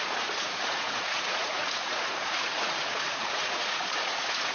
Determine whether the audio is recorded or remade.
remade